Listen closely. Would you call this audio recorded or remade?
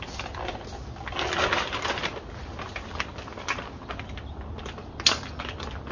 recorded